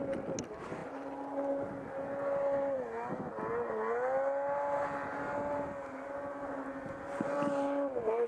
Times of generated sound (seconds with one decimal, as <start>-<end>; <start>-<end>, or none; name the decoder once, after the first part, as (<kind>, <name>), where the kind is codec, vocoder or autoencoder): none